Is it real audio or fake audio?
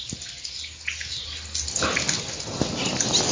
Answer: real